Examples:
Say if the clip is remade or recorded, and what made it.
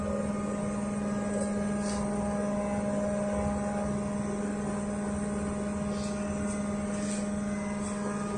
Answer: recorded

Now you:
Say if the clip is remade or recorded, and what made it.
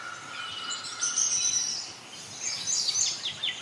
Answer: recorded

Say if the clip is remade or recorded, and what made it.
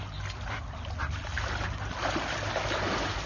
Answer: recorded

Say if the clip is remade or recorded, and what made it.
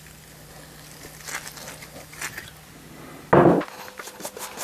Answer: recorded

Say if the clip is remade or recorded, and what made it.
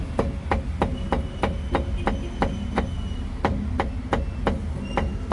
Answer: recorded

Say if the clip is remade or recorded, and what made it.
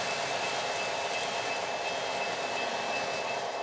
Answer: recorded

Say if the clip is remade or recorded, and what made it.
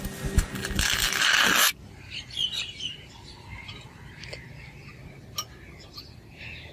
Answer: recorded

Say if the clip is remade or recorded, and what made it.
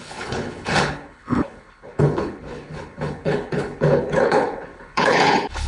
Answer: remade, codec, HILCodec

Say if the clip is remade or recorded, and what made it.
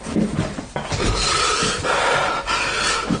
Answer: recorded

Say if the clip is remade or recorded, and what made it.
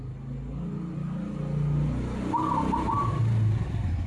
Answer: recorded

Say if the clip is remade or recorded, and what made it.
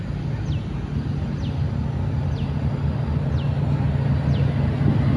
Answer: recorded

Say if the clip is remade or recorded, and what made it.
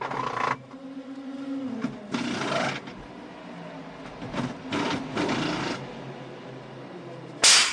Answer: recorded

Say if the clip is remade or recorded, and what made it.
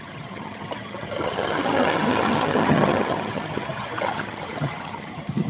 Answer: remade, vocoder, HiFi-GAN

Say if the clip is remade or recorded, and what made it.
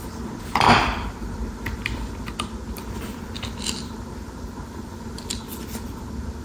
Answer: remade, vocoder, BigVGAN v2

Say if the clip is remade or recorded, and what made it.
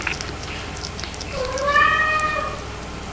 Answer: recorded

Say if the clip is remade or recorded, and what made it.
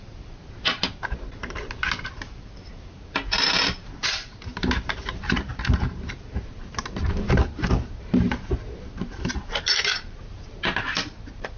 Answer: remade, vocoder, BigVGAN v2